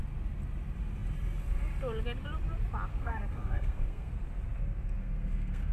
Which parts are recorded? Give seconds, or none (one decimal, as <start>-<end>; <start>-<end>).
0.0-2.9; 4.1-5.0